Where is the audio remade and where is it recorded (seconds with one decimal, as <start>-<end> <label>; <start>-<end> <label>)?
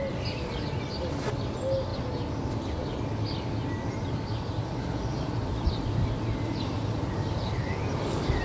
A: 0.0-8.4 recorded